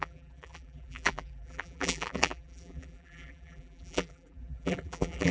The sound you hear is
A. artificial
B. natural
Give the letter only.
A